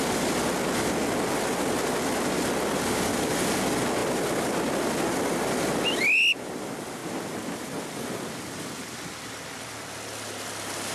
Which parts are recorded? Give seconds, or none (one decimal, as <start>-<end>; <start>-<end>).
0.0-7.0; 9.7-10.9

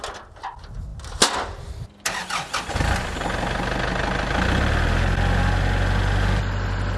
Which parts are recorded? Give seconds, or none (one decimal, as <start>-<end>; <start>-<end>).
0.0-7.0